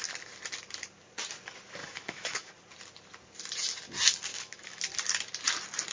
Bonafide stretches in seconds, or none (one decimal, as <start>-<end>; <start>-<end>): 0.0-1.8; 2.5-4.3; 4.8-5.9